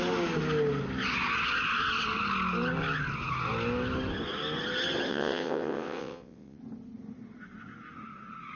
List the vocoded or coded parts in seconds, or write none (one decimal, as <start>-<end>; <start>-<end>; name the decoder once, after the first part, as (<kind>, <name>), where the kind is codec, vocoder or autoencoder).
5.1-6.6 (vocoder, WaveNeXt)